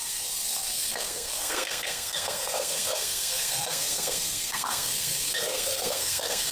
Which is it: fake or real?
fake